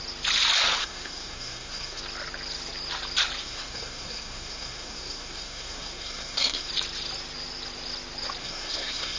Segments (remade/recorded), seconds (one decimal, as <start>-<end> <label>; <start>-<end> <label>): 0.0-0.8 recorded; 0.8-2.0 remade; 2.0-3.4 recorded; 3.4-6.7 remade; 6.7-8.4 recorded; 8.4-9.2 remade